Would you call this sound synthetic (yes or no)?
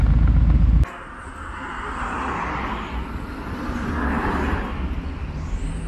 no